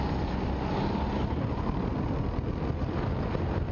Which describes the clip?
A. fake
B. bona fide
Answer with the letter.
B